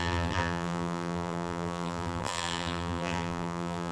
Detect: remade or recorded remade